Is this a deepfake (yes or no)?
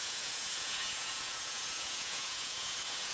yes